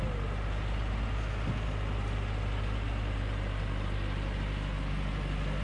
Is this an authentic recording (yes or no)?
yes